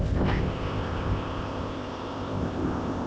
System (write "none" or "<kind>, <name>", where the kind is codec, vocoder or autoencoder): codec, ZipCodec